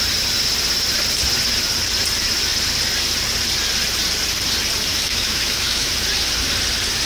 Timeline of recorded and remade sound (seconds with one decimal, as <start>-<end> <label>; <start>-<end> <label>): 0.0-4.9 recorded; 4.9-5.9 remade; 5.9-7.1 recorded

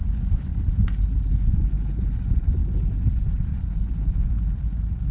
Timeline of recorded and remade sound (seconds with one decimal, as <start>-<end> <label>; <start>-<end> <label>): 0.0-0.5 remade; 0.5-1.3 recorded; 1.3-2.6 remade; 2.6-3.5 recorded; 3.5-5.1 remade

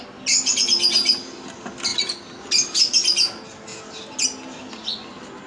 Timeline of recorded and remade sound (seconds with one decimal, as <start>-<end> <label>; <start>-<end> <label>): 0.0-5.5 recorded